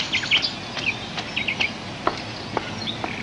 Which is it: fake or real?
real